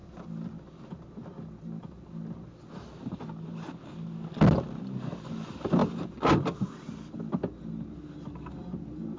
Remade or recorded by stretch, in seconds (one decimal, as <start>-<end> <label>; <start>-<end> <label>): 0.0-5.8 recorded; 5.8-6.7 remade; 6.7-9.2 recorded